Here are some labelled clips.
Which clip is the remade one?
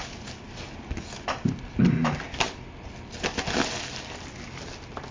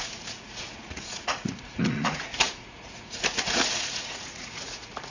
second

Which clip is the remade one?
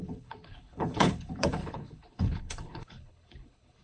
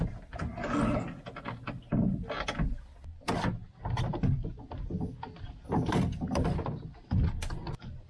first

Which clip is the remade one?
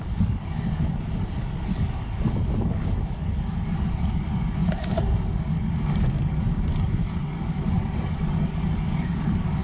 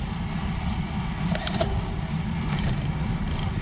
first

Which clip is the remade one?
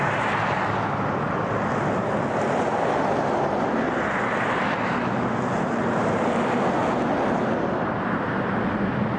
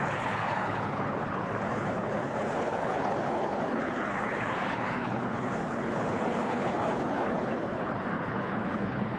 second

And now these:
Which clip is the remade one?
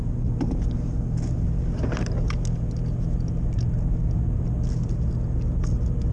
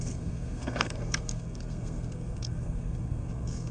second